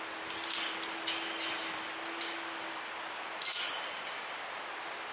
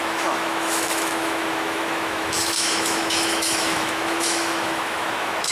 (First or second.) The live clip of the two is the first